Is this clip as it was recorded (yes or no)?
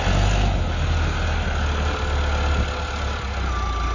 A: yes